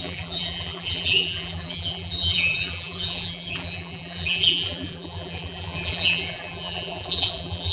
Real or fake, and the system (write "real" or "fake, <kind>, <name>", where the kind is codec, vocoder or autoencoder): fake, vocoder, BigVGAN v2